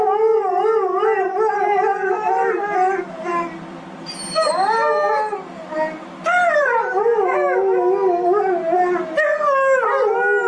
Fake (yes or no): no